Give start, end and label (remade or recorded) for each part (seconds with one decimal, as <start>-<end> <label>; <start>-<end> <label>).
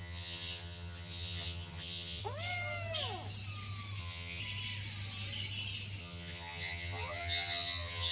0.0-2.2 remade; 2.2-4.0 recorded; 4.0-4.4 remade; 4.4-6.0 recorded; 6.0-8.1 remade